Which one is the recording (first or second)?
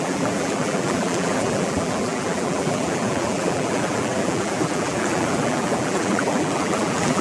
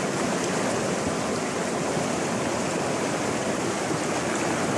second